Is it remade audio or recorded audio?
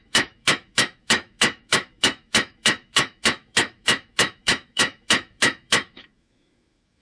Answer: remade